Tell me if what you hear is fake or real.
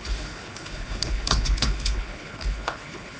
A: fake